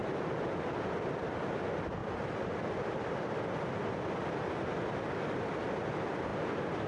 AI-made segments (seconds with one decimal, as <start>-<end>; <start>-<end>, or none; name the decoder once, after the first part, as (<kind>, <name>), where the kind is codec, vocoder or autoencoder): 2.0-5.7 (vocoder, BigVGAN v2)